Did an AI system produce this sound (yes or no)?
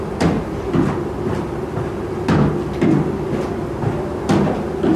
no